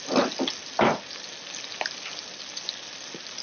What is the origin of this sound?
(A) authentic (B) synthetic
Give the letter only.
A